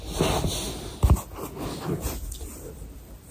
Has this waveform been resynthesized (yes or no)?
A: no